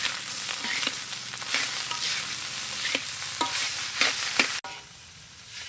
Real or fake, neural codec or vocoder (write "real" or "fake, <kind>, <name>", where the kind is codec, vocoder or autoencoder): real